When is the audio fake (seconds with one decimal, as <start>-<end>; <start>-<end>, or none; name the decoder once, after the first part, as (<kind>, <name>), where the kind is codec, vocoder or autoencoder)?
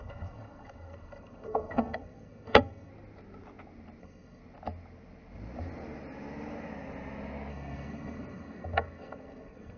0.0-2.9 (codec, SNAC); 4.0-4.4; 7.5-9.8